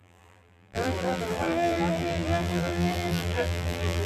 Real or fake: fake